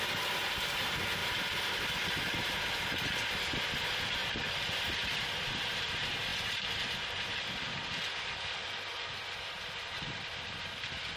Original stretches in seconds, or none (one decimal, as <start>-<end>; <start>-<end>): 0.0-1.2; 2.2-6.3; 8.7-11.2